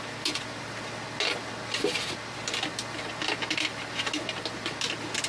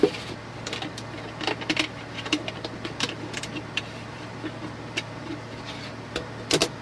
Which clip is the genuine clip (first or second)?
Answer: first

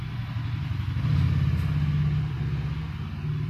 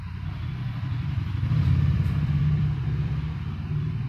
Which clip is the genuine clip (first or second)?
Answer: first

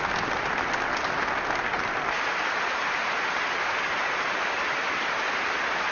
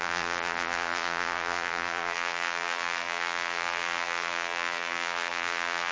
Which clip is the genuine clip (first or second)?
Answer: first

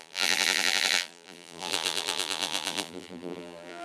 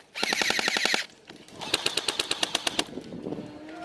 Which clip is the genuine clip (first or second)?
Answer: second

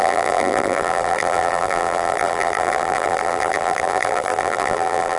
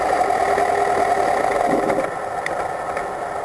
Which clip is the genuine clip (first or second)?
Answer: second